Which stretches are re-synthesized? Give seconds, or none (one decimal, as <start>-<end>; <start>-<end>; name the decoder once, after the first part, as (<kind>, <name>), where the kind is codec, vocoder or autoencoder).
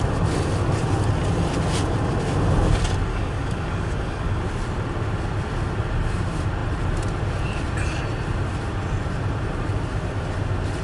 3.1-4.4 (codec, DAC)